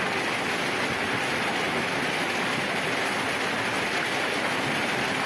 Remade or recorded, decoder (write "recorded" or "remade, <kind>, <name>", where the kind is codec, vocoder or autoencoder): recorded